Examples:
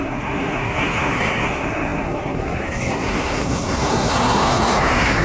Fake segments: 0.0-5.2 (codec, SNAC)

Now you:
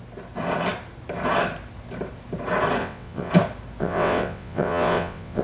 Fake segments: 2.8-3.3 (vocoder, WaveNeXt); 3.8-5.4

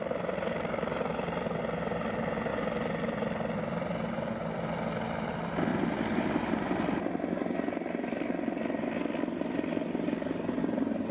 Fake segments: 5.7-10.6 (vocoder, BigVGAN v2)

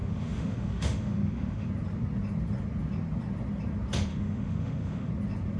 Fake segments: 0.0-1.7 (autoencoder, DAC-VAE); 4.1-5.1

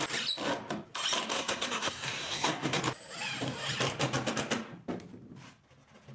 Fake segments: 1.3-2.8 (codec, SNAC)